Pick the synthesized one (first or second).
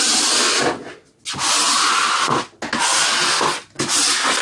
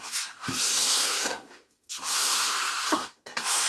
second